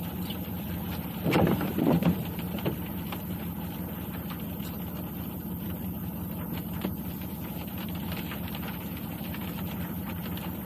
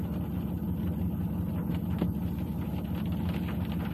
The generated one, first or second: first